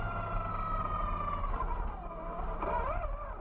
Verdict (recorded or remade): recorded